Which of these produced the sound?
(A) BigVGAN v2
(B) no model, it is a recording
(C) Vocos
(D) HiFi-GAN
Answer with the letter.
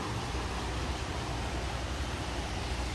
B